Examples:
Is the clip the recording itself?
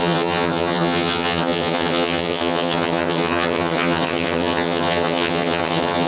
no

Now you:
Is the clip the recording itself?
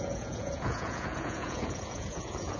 no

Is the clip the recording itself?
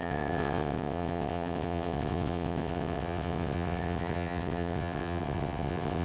no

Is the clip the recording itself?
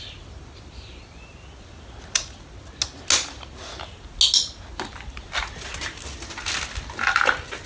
yes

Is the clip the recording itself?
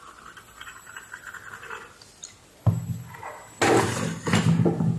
yes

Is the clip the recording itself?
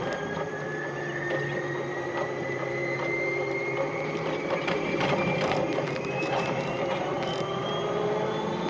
no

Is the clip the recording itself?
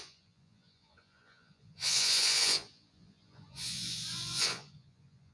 no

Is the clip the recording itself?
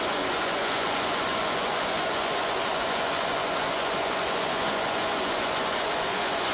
no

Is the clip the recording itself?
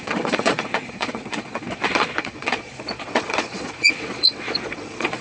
no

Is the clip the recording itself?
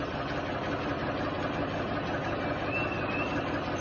yes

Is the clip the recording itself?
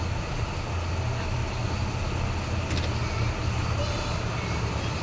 yes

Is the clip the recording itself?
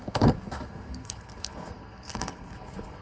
no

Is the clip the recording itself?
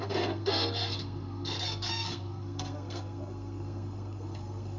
no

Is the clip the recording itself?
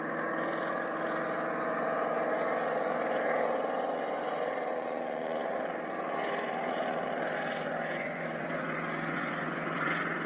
no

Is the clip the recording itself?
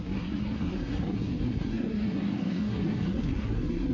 no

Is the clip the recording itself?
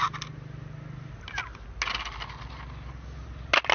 yes